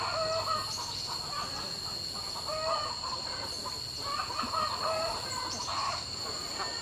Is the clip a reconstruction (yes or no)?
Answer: no